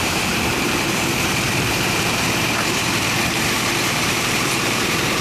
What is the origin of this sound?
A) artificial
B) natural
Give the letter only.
A